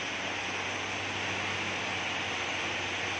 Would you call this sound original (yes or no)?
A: yes